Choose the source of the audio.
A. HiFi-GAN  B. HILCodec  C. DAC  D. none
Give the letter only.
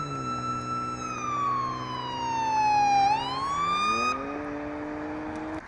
D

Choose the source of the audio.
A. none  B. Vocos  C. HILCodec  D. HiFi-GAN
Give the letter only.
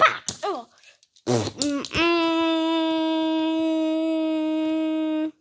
A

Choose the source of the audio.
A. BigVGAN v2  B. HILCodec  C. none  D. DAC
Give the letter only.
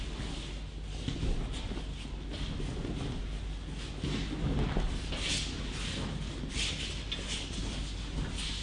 C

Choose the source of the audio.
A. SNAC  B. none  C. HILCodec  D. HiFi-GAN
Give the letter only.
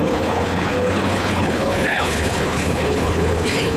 C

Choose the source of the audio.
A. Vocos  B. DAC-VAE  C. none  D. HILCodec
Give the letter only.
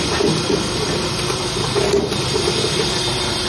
C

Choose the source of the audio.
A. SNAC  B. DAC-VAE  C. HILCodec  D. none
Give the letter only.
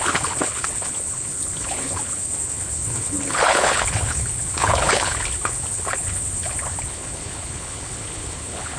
C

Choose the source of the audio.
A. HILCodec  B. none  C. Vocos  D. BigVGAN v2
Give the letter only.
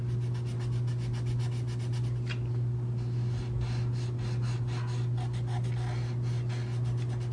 B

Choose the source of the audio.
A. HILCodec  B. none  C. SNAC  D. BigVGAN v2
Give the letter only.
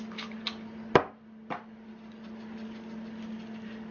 B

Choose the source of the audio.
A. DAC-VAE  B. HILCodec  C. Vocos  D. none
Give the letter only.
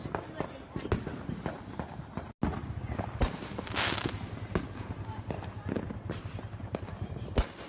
D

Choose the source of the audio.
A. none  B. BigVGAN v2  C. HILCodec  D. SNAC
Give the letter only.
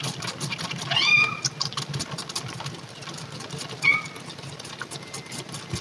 A